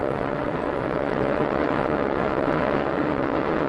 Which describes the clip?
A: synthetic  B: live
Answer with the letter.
A